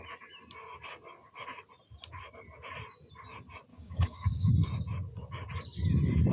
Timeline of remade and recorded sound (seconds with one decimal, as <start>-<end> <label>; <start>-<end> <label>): 0.0-3.7 recorded; 3.7-4.5 remade; 4.5-6.3 recorded